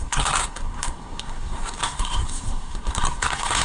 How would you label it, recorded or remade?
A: remade